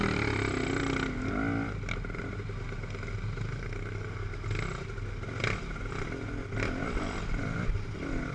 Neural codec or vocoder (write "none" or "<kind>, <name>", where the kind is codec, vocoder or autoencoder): none